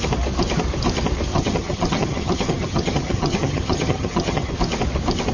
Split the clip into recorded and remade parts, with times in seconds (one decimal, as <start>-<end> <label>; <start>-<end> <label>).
0.0-1.3 recorded; 1.3-4.5 remade; 4.5-5.3 recorded